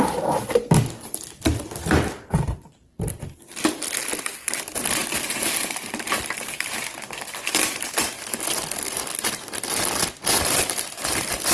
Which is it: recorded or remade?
recorded